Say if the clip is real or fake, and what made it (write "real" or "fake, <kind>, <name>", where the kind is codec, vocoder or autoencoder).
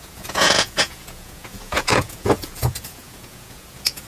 fake, vocoder, Vocos